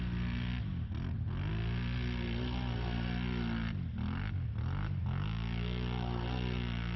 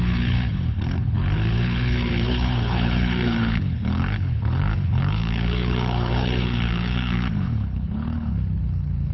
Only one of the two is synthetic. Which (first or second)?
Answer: second